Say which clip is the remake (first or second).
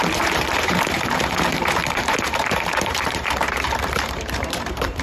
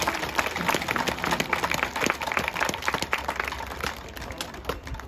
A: first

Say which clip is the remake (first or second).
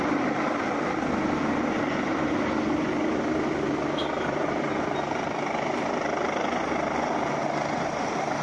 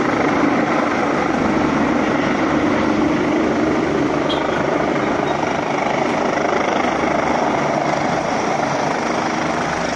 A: second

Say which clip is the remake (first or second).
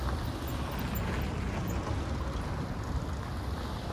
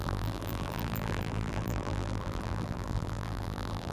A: second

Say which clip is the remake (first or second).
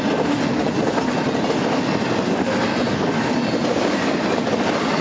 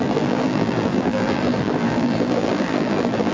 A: second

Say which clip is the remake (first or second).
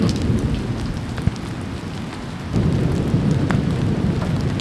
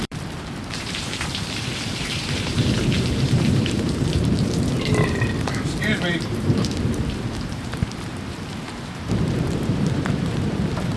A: second